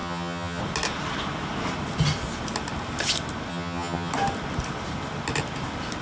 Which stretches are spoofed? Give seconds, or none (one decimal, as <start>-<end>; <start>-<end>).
0.0-0.6; 3.5-4.1